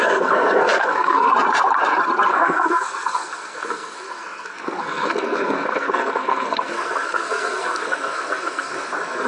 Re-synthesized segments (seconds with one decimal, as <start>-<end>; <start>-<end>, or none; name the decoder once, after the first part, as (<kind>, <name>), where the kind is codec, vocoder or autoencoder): 0.0-1.3 (codec, SNAC); 2.3-9.3